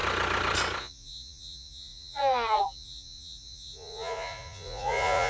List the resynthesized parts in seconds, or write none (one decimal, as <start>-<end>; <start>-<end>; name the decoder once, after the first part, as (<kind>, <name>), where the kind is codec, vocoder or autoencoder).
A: 0.8-5.3 (vocoder, Vocos)